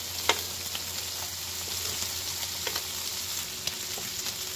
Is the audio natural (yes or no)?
yes